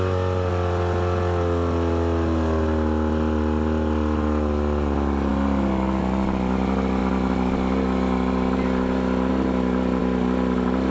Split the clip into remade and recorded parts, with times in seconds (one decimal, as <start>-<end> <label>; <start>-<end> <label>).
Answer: 0.0-10.9 recorded